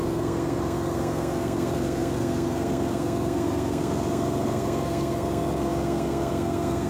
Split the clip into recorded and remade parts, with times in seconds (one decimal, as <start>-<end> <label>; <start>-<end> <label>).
0.0-6.9 remade

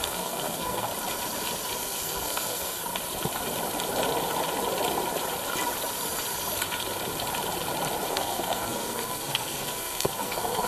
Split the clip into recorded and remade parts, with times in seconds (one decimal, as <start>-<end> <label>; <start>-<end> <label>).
0.0-0.9 remade; 0.9-1.8 recorded; 1.8-2.9 remade; 2.9-8.1 recorded; 8.1-10.7 remade

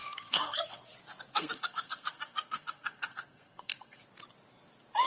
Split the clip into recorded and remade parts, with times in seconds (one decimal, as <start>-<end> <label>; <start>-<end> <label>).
0.0-0.8 remade; 0.8-1.3 recorded; 1.3-4.0 remade; 4.0-5.1 recorded

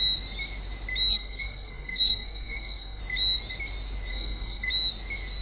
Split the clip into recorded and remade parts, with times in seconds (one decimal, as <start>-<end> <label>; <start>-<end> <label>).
0.0-1.1 recorded; 1.1-3.0 remade; 3.0-4.1 recorded; 4.1-4.7 remade; 4.7-5.4 recorded

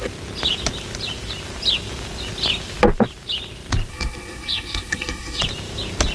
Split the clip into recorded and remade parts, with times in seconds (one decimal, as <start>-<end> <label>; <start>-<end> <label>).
0.0-3.9 recorded; 3.9-5.4 remade; 5.4-6.1 recorded

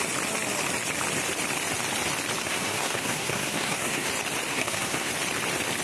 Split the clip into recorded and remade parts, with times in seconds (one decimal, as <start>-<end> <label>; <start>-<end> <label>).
0.0-2.4 recorded; 2.4-4.1 remade; 4.1-4.5 recorded; 4.5-5.1 remade; 5.1-5.8 recorded

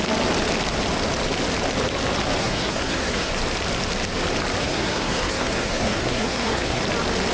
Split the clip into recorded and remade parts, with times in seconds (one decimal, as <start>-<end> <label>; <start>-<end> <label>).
0.0-2.4 recorded; 2.4-3.3 remade; 3.3-4.6 recorded; 4.6-6.8 remade; 6.8-7.3 recorded

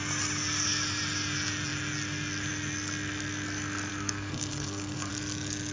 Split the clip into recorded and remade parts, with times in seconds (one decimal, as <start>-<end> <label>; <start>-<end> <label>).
0.0-3.9 recorded; 3.9-5.1 remade; 5.1-5.7 recorded